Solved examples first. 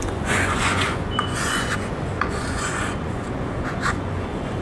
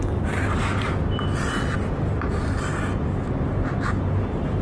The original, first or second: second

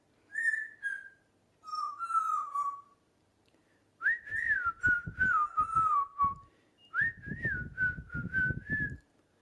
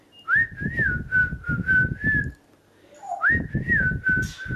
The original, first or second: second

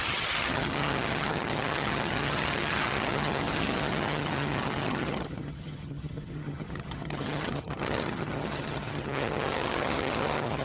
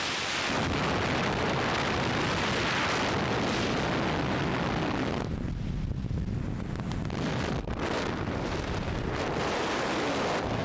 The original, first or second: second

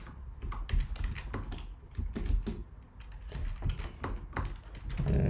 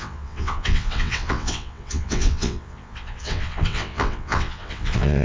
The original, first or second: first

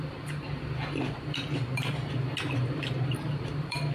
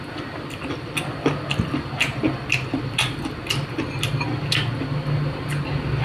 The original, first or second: second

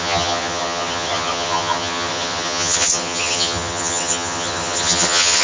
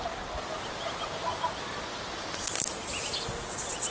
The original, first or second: second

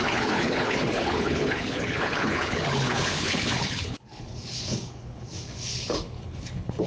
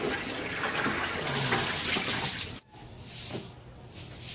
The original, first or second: second